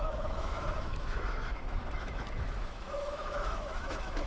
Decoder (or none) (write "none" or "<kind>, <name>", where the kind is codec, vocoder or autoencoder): autoencoder, DAC-VAE